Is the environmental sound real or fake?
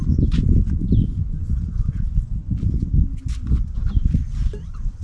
fake